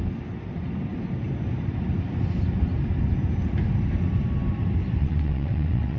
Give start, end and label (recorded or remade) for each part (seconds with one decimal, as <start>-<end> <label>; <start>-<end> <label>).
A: 0.0-5.0 recorded; 5.0-6.0 remade